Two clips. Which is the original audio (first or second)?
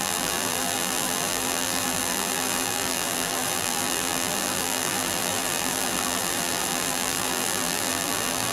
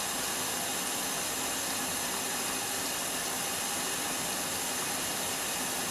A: second